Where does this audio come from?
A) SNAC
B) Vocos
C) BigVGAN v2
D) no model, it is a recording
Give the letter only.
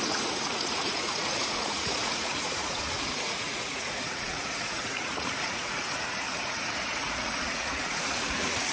B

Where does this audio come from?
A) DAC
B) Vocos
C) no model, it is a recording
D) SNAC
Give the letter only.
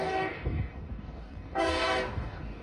A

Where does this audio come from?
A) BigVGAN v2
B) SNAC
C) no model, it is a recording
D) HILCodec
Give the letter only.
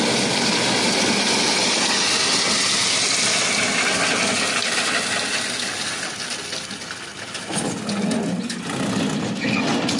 C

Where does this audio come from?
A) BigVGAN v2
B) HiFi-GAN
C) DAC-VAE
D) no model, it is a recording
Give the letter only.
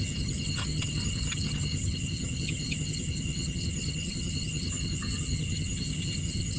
B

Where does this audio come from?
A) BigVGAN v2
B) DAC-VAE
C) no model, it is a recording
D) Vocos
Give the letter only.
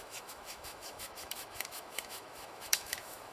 B